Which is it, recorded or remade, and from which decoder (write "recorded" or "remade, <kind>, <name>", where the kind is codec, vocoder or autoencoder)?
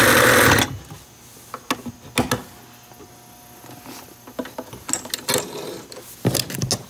recorded